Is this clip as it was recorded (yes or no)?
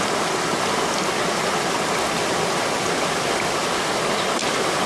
yes